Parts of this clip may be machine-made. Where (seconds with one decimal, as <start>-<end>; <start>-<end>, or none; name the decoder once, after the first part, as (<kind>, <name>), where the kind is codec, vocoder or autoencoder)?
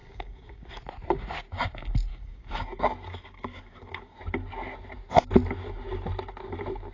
0.0-0.8 (codec, DAC); 2.1-4.2